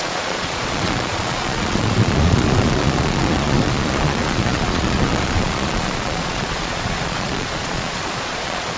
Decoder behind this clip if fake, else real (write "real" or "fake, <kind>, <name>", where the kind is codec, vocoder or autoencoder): fake, vocoder, Vocos